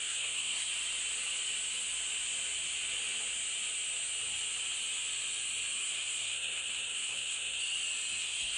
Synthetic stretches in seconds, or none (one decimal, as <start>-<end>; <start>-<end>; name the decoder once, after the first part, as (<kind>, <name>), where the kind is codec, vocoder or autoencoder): 0.0-0.7 (codec, SNAC); 5.8-7.6; 8.2-8.6